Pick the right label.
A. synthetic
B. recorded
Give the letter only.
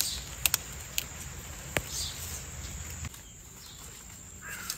B